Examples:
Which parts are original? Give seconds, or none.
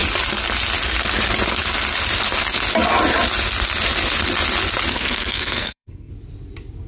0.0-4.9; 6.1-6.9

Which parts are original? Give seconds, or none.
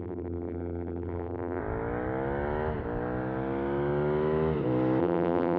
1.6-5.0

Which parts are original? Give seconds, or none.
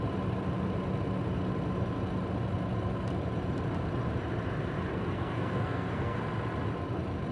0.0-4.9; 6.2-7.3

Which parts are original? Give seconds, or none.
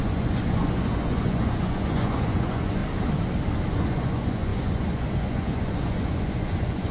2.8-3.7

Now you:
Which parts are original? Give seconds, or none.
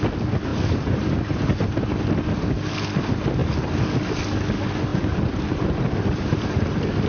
0.0-0.5; 1.8-4.9; 5.4-7.1